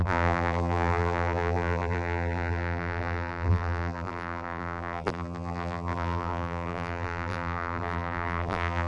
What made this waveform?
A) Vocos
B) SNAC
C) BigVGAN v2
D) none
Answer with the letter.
C